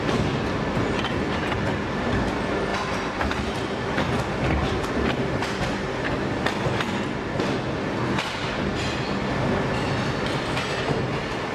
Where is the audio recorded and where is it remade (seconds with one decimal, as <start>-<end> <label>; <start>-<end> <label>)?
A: 0.0-11.5 recorded